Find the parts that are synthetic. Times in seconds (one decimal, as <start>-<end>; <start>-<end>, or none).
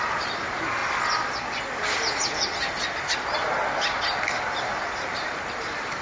0.0-0.8; 4.4-6.0